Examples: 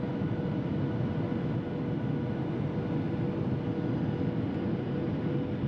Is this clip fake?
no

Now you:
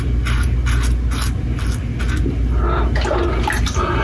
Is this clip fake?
no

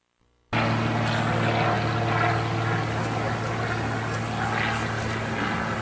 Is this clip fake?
no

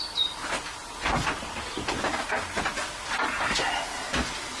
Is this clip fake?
no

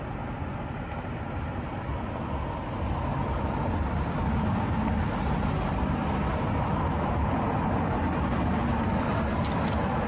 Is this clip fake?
no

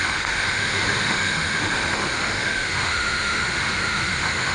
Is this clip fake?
yes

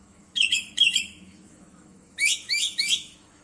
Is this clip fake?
yes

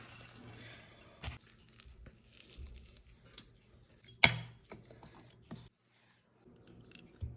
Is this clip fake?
no